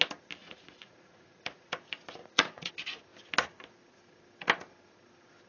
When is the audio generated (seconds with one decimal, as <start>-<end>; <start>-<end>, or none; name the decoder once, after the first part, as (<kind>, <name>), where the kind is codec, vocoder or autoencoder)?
0.4-1.7 (vocoder, Vocos); 2.2-2.7